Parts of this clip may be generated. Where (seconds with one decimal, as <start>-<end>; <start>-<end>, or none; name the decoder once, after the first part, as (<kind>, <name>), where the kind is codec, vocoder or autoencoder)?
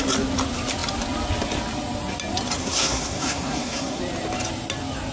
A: 2.6-4.0 (codec, SNAC)